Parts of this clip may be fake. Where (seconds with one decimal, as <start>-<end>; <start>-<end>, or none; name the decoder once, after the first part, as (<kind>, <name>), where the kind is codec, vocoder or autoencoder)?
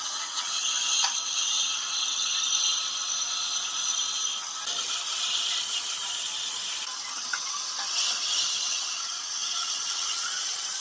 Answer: 0.0-0.6 (vocoder, WaveNeXt); 1.3-2.3; 7.1-7.6; 8.6-10.8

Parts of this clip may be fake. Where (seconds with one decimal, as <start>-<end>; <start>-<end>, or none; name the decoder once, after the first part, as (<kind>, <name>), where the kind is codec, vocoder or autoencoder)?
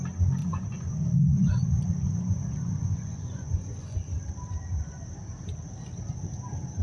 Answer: 0.4-4.1 (vocoder, Vocos)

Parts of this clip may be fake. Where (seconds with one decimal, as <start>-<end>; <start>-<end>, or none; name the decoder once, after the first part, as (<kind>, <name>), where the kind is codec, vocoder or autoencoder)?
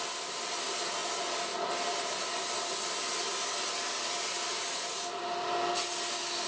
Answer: none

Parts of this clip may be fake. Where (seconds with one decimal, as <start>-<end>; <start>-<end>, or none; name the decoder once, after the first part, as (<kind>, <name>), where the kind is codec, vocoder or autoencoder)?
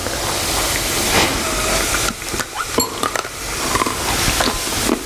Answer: none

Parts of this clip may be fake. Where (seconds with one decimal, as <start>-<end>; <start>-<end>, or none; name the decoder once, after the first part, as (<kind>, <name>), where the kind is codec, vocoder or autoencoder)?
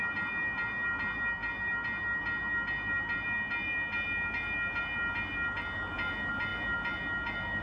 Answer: none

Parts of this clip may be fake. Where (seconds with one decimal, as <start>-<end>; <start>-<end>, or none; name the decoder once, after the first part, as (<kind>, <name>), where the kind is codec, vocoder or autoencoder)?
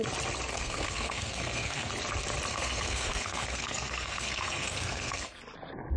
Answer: 0.5-1.9 (codec, SNAC); 2.5-5.4